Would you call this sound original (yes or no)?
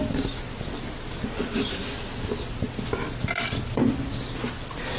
yes